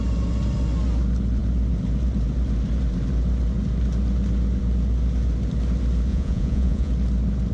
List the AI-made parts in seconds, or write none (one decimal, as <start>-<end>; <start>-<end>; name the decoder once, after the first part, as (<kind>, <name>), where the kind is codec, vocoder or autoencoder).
6.1-6.9 (vocoder, Vocos)